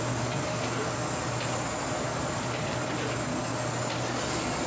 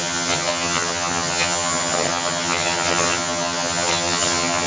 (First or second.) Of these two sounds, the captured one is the first